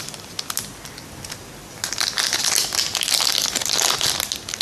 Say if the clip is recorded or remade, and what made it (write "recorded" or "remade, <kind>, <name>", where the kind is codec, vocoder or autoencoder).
recorded